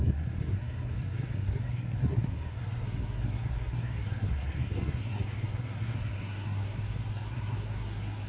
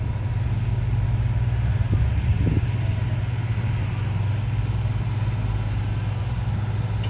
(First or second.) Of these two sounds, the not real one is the first